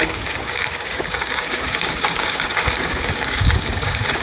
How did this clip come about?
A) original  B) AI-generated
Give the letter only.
B